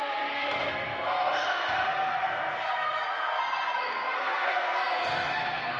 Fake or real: fake